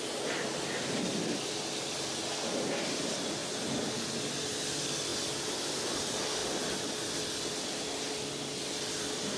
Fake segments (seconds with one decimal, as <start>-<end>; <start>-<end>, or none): 0.0-3.4; 4.2-5.1; 5.7-9.4